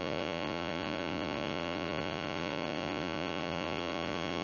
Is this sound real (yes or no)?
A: no